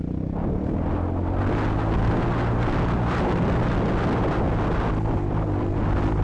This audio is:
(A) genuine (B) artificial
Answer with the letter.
A